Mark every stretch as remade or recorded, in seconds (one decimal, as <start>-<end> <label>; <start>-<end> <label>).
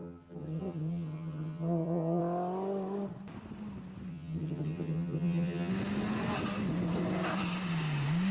0.0-2.2 remade; 2.2-4.1 recorded; 4.1-5.7 remade; 5.7-8.3 recorded